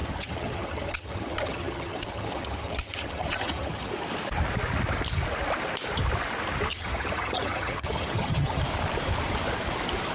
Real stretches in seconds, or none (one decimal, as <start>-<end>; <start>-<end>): 3.9-6.7; 8.6-10.1